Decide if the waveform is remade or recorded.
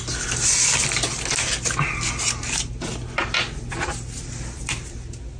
recorded